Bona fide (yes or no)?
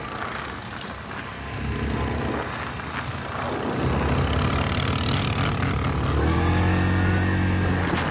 yes